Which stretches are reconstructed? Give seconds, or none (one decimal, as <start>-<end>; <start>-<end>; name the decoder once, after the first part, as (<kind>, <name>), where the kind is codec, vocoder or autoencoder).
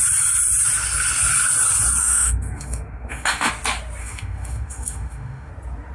2.0-3.5 (autoencoder, DAC-VAE); 4.0-5.5